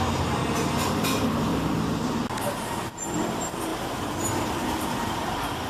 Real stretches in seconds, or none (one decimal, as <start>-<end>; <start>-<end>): 0.4-1.0; 1.5-3.0